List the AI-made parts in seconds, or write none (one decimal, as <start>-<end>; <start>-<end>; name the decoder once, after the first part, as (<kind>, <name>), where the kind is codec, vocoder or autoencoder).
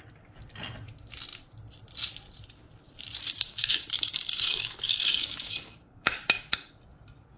3.2-6.7 (codec, DAC)